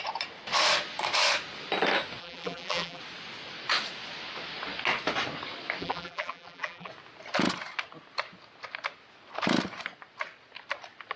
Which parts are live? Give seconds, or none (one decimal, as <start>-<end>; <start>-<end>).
0.0-2.2; 3.0-5.8; 6.9-11.2